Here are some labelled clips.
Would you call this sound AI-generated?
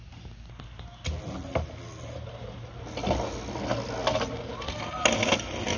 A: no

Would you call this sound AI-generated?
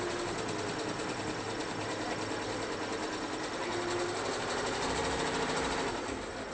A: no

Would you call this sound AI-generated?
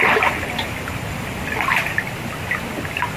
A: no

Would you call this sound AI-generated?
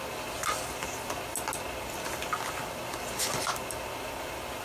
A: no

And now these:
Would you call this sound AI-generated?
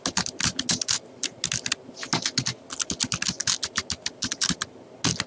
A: no